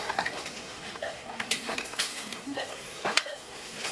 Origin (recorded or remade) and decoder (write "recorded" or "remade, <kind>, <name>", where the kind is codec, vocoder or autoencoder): remade, codec, SNAC